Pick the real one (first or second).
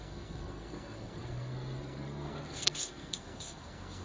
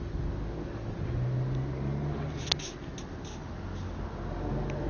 second